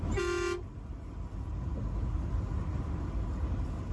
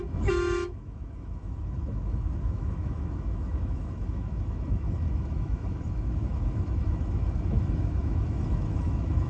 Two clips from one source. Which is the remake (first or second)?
second